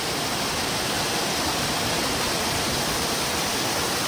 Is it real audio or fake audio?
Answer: real